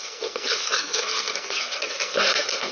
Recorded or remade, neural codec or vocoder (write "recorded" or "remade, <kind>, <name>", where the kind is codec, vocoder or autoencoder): remade, codec, SNAC